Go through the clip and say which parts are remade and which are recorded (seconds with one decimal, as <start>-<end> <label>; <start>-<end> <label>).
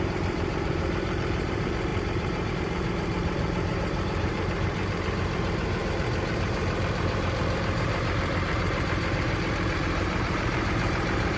0.0-11.4 remade